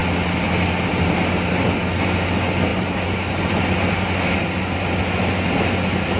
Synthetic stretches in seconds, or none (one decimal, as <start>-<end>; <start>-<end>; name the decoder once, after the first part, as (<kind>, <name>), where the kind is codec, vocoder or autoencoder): none